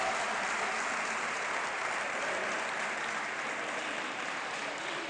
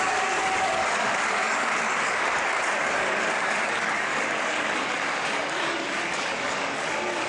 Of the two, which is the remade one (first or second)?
second